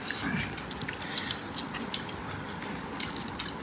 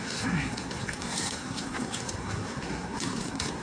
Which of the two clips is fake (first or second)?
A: second